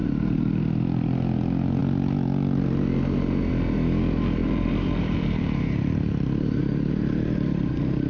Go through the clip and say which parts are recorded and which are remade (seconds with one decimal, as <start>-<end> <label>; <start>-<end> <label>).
0.0-4.4 recorded; 4.4-6.6 remade; 6.6-8.1 recorded